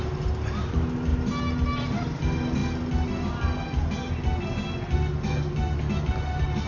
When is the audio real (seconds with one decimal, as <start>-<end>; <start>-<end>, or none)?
0.0-6.7